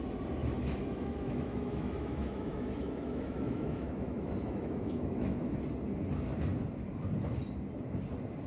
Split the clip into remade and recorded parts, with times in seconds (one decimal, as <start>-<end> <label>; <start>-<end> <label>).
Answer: 0.0-0.4 recorded; 0.4-5.5 remade; 5.5-8.5 recorded